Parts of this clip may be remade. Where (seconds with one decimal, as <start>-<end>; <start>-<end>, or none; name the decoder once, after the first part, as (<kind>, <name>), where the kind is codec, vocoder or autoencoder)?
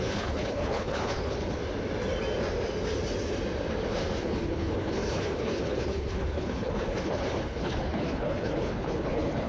0.0-1.6 (codec, HILCodec); 4.2-9.5